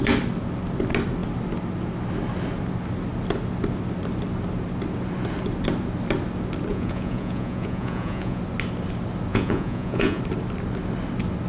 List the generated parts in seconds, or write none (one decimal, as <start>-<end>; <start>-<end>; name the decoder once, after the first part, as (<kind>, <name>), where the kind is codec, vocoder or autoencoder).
6.7-8.4 (vocoder, Vocos); 9.3-10.2